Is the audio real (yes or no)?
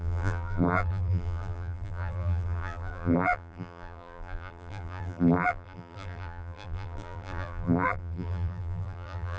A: no